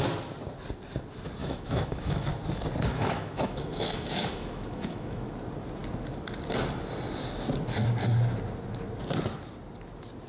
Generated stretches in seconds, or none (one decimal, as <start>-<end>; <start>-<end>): 1.4-2.4; 2.9-5.3